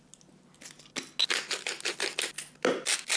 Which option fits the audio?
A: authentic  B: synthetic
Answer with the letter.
A